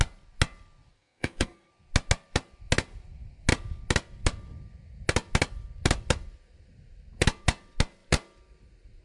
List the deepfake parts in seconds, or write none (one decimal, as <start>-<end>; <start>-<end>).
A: 0.9-1.7